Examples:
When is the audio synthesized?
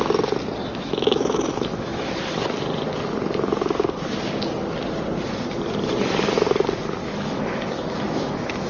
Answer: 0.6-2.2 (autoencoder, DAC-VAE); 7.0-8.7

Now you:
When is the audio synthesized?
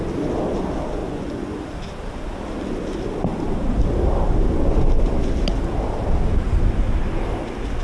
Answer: 1.0-1.6 (vocoder, Vocos)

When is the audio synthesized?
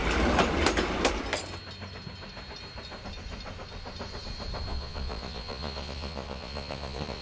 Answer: 4.7-7.2 (vocoder, Vocos)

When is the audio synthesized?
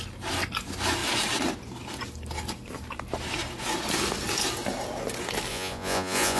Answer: 5.5-6.4 (vocoder, Vocos)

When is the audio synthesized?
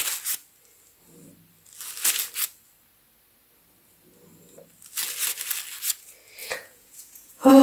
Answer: 6.4-7.6 (vocoder, Vocos)